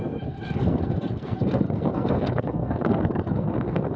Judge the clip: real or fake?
fake